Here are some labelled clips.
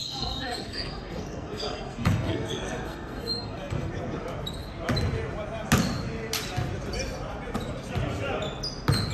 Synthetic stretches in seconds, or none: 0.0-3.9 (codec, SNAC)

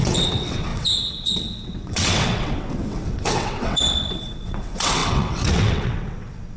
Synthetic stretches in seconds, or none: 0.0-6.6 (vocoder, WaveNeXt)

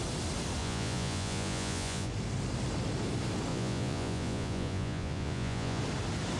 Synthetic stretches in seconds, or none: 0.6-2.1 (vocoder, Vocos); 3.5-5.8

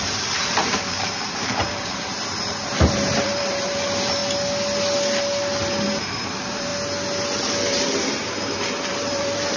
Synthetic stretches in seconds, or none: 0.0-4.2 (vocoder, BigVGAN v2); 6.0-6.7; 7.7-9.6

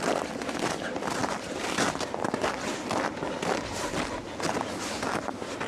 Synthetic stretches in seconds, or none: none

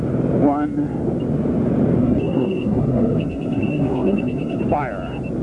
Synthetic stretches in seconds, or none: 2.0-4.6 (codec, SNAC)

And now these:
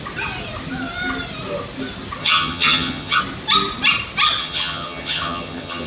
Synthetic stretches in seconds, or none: 2.2-3.2 (vocoder, HiFi-GAN); 4.4-5.9